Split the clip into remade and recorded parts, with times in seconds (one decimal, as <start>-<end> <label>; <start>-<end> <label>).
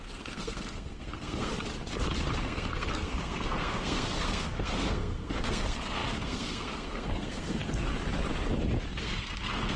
0.0-1.5 remade; 1.5-2.4 recorded; 2.4-7.6 remade; 7.6-9.0 recorded; 9.0-9.8 remade